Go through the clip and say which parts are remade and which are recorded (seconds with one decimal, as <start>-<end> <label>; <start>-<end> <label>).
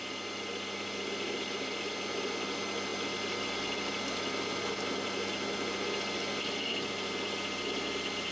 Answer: 0.0-8.3 recorded